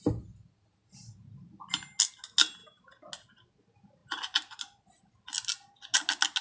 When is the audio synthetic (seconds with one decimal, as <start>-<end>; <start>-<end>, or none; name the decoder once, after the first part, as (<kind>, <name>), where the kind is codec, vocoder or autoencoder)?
none